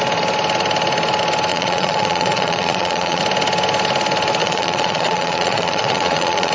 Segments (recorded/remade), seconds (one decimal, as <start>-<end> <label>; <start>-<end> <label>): 0.0-1.5 recorded; 1.5-3.2 remade; 3.2-4.4 recorded; 4.4-6.5 remade